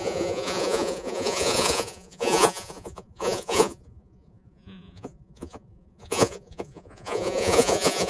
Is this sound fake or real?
fake